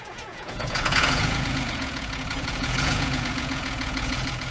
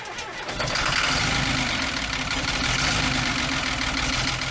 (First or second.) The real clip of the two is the second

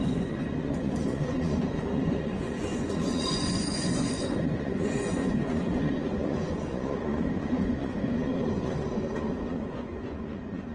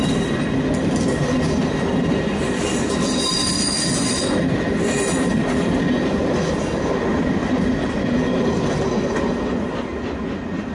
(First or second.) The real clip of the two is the second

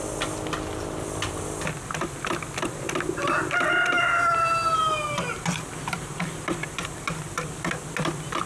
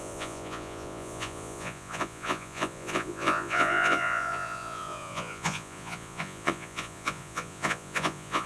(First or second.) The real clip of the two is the first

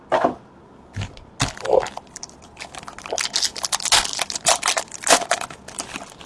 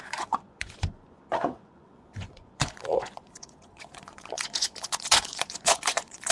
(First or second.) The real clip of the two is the first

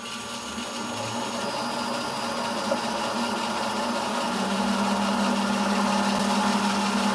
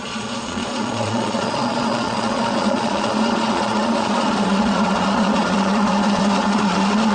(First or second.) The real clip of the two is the first